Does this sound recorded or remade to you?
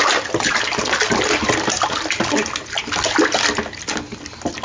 recorded